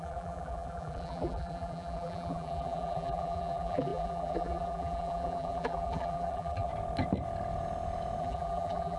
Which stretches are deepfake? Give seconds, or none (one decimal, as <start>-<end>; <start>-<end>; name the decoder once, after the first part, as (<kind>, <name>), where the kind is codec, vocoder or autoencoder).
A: 0.0-6.7 (vocoder, BigVGAN v2); 8.2-9.0